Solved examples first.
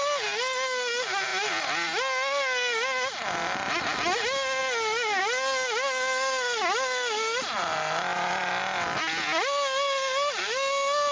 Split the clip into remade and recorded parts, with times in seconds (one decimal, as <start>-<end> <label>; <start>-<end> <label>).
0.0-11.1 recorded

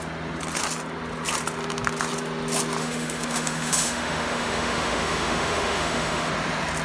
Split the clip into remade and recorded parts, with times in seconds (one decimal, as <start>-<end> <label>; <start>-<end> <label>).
0.0-2.8 recorded; 2.8-6.3 remade; 6.3-6.8 recorded

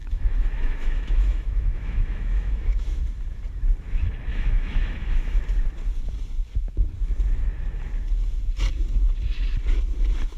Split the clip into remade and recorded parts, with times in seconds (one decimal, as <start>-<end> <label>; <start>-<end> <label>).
0.0-3.0 remade; 3.0-4.3 recorded; 4.3-5.4 remade; 5.4-10.4 recorded

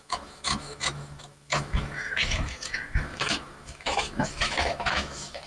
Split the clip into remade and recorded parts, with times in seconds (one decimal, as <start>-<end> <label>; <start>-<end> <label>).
0.0-5.5 remade

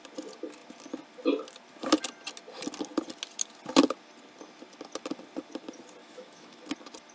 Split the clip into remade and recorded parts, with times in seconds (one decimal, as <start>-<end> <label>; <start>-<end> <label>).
0.0-6.0 recorded; 6.0-6.6 remade; 6.6-7.1 recorded